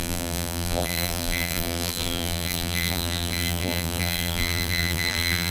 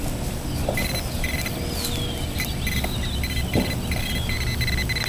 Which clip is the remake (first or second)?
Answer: first